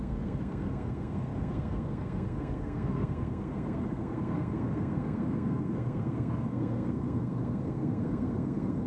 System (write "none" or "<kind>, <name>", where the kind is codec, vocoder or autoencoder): codec, SNAC